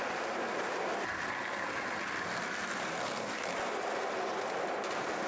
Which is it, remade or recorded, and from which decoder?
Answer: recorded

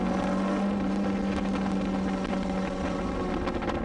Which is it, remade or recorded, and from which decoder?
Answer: recorded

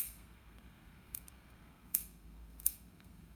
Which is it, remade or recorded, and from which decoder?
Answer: remade, codec, SNAC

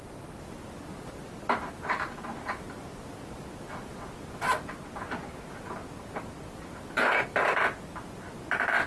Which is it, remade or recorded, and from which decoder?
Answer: recorded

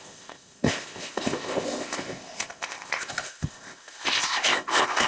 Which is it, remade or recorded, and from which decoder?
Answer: remade, codec, ZipCodec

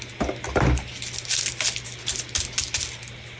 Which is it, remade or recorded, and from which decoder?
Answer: recorded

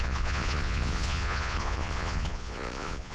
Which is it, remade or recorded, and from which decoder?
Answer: remade, vocoder, Vocos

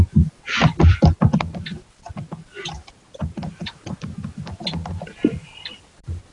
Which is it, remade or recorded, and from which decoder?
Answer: recorded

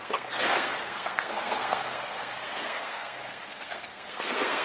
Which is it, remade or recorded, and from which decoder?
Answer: remade, codec, SNAC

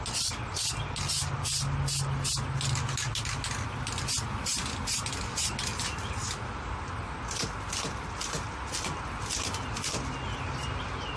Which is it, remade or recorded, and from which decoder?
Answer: recorded